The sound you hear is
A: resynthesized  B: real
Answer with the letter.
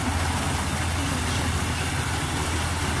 B